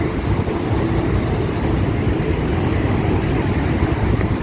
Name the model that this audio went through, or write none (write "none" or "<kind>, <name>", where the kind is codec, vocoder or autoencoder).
none